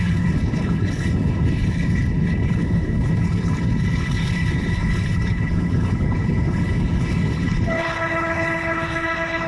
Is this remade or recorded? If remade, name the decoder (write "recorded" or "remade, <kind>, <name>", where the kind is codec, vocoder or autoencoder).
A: remade, codec, HILCodec